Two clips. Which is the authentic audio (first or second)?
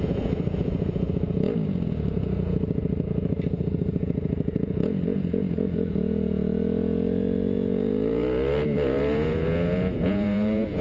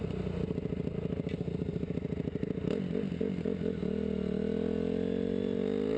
second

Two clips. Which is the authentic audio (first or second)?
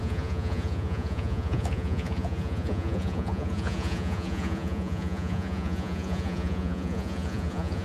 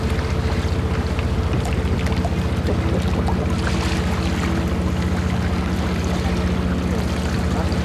second